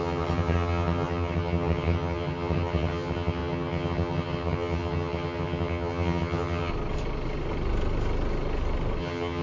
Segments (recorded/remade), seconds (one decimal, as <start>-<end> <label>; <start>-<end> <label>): 0.0-6.7 remade; 6.7-9.0 recorded; 9.0-9.4 remade